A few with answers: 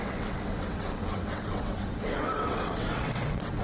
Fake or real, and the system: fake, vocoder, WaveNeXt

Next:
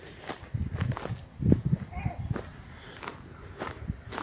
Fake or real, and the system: real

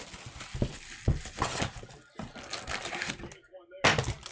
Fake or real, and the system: real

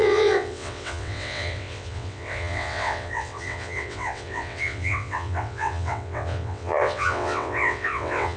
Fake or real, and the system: fake, vocoder, WaveNeXt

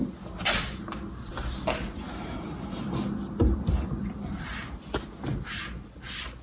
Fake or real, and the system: real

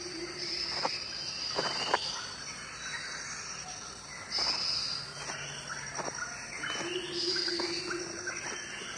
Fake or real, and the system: real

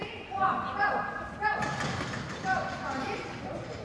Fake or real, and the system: real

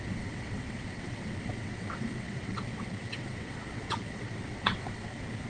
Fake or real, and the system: fake, vocoder, WaveNeXt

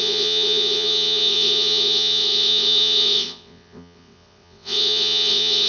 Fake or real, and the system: fake, vocoder, WaveNeXt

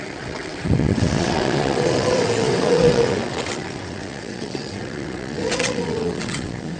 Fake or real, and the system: fake, vocoder, WaveNeXt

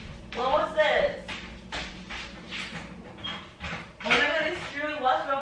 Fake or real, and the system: real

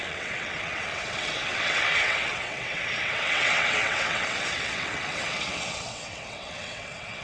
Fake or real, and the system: fake, vocoder, WaveNeXt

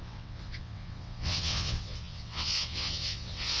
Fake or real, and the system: fake, vocoder, WaveNeXt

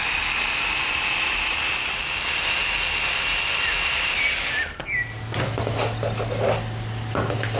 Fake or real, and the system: real